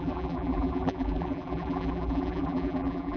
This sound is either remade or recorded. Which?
remade